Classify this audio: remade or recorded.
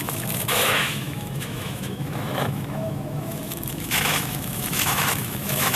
remade